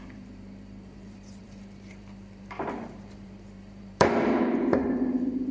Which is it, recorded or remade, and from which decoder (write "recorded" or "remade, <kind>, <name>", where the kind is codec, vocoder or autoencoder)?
remade, vocoder, BigVGAN v2